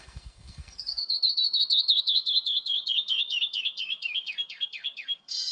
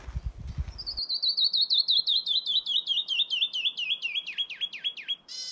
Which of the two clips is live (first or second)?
second